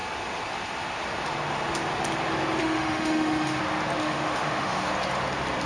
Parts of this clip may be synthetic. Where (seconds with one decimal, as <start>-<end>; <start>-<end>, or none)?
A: 2.6-3.6; 4.0-4.9